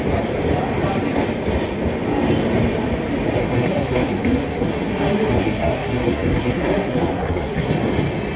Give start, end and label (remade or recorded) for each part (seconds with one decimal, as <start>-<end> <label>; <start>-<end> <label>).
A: 0.0-3.4 recorded; 3.4-7.7 remade; 7.7-8.4 recorded